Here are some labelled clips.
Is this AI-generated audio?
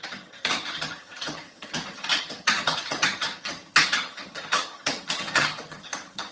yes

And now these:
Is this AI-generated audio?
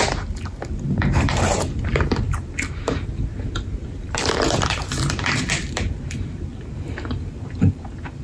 yes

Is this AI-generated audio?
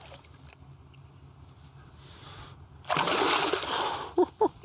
no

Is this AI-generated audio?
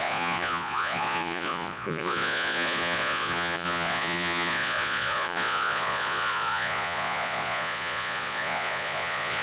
yes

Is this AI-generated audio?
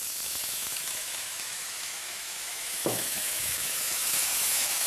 yes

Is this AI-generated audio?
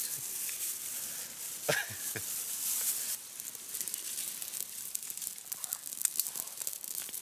no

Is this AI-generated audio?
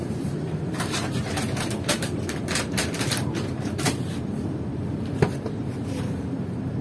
yes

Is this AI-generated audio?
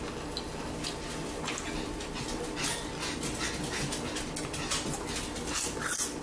no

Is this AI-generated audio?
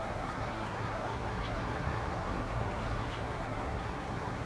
yes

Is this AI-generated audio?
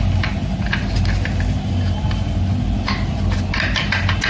no